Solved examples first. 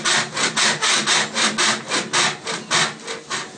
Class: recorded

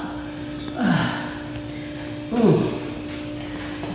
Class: recorded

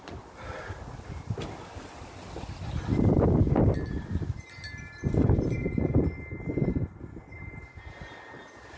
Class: recorded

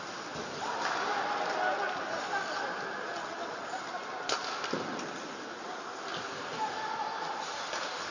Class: recorded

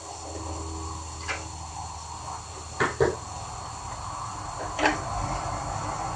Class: recorded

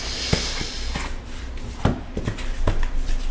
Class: recorded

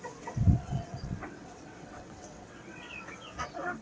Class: remade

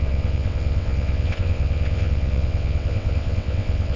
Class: remade